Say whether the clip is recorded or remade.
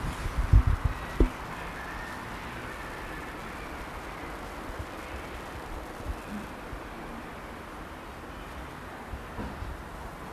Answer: recorded